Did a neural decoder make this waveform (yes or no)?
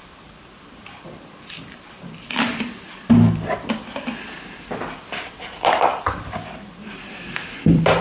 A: yes